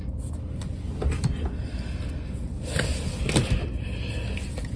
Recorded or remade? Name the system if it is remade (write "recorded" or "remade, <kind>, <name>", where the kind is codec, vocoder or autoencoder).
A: recorded